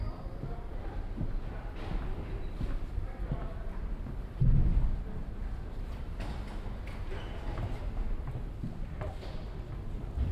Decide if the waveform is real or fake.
fake